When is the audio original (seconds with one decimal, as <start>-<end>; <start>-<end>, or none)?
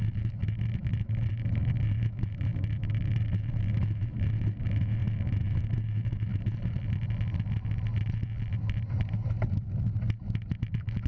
6.3-10.5